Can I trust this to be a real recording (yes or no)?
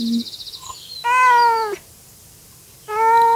yes